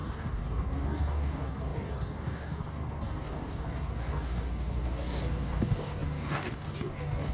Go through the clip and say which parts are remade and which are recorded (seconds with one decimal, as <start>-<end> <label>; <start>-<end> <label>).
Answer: 0.0-7.3 remade